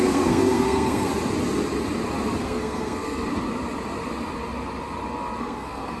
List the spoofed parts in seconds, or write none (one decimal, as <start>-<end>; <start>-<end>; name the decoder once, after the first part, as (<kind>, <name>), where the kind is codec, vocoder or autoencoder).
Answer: 0.0-1.1 (codec, SNAC); 2.4-3.3; 5.4-6.0